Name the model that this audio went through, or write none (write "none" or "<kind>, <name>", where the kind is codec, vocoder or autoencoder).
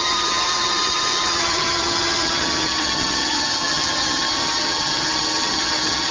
vocoder, HiFi-GAN